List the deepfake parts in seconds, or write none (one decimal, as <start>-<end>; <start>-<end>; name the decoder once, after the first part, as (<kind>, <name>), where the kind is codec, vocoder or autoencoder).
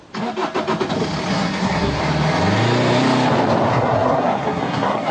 1.3-2.0 (codec, SNAC); 3.7-5.1